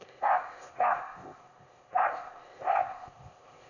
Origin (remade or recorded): remade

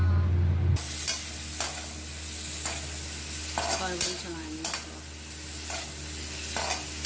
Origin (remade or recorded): recorded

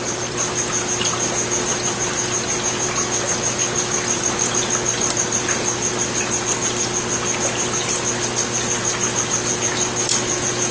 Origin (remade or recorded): recorded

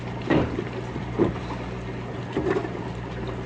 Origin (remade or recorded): recorded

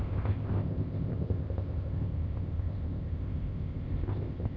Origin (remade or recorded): remade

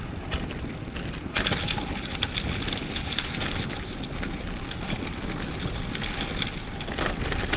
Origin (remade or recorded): recorded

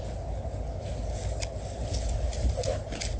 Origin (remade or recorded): recorded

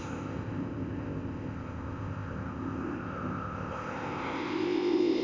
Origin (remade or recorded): remade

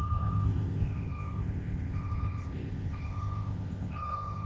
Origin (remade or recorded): remade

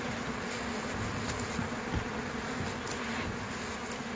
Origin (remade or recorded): recorded